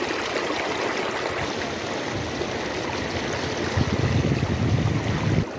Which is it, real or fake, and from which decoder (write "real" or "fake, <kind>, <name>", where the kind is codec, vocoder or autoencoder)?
real